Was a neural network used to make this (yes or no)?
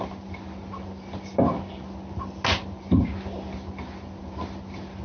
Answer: no